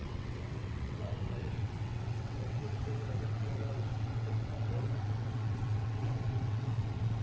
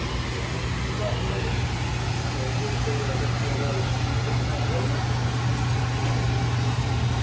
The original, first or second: second